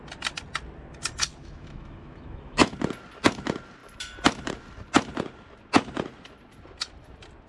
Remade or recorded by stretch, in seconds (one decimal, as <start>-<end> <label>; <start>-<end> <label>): 0.0-1.4 recorded; 1.4-2.7 remade; 2.7-7.5 recorded